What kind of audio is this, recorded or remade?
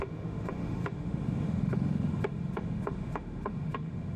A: remade